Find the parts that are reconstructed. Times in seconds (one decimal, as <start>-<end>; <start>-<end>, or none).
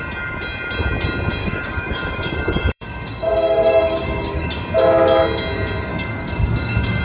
1.4-4.5; 5.9-7.0